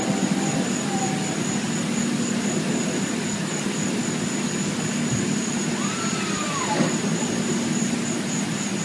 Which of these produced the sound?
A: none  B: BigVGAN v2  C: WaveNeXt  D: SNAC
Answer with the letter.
A